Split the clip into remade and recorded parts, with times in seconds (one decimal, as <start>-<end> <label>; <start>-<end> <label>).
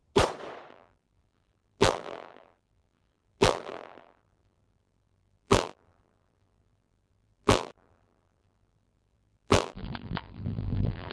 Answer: 0.0-0.7 recorded; 0.7-11.1 remade